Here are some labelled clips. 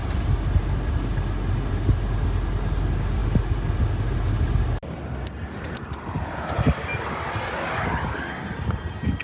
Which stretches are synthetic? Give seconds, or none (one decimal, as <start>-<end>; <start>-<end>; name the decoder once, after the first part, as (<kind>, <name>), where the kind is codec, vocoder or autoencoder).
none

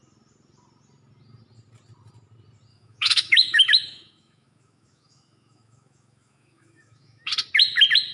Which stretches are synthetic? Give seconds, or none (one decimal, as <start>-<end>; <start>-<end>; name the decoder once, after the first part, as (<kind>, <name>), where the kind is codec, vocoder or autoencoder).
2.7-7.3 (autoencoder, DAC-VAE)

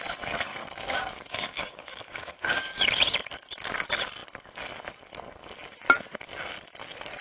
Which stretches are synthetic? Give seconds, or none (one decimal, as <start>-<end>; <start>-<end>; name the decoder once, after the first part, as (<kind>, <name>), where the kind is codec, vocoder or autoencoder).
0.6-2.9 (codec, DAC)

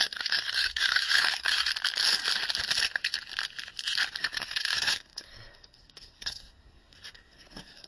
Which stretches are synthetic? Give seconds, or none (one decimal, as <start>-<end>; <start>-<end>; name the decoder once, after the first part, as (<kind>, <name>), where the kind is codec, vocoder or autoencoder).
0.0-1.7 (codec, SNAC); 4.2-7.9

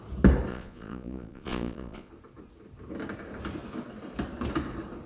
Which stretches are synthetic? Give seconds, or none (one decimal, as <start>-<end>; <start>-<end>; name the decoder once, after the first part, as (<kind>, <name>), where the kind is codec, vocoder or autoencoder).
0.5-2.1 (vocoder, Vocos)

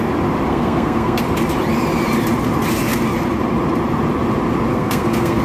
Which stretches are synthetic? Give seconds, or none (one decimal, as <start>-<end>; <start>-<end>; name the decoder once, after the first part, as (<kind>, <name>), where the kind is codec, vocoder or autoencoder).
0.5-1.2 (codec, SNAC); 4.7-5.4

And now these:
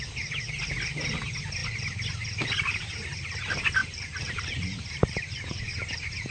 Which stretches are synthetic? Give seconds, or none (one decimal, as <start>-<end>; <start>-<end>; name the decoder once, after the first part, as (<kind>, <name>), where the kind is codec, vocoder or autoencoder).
3.8-5.6 (vocoder, BigVGAN v2)

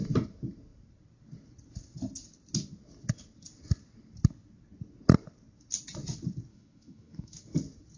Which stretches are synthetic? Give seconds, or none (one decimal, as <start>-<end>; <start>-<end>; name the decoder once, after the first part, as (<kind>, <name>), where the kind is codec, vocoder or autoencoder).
6.5-7.4 (autoencoder, DAC-VAE)